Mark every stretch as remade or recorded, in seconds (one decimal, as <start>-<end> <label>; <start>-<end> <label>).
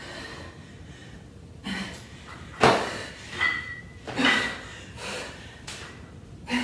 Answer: 0.0-1.0 recorded; 1.0-2.7 remade; 2.7-4.7 recorded; 4.7-6.6 remade